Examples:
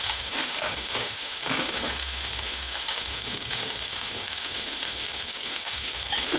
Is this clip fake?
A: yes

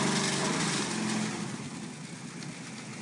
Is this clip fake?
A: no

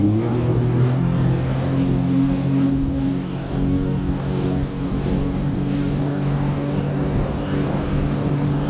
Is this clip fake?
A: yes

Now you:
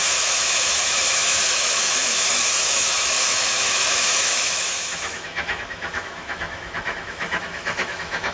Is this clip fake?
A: yes